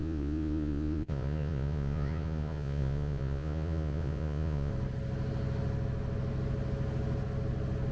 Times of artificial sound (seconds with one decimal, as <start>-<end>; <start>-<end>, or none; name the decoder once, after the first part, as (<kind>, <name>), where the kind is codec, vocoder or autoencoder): 0.0-4.7 (vocoder, Vocos)

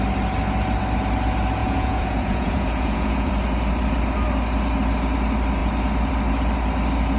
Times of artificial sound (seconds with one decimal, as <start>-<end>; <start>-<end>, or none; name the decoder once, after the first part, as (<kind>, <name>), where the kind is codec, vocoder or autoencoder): 1.6-3.3 (vocoder, Vocos)

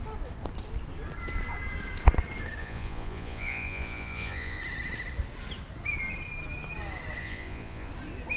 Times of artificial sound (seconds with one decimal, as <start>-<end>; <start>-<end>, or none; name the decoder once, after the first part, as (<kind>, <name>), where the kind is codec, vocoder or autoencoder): 2.6-4.6 (vocoder, Vocos); 7.2-7.9

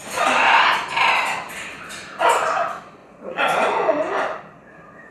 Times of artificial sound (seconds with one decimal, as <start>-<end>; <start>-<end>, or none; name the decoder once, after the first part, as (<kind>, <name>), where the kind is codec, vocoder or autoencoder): 3.0-4.0 (vocoder, Vocos)

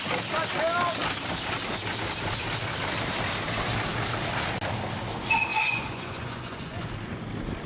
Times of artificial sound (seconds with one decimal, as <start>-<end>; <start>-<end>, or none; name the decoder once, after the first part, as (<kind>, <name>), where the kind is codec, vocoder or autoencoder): 5.5-6.9 (vocoder, Vocos)

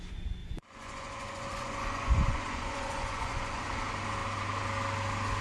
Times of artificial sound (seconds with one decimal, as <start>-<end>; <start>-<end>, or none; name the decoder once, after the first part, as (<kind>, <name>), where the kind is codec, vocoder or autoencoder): 0.4-3.6 (vocoder, Vocos)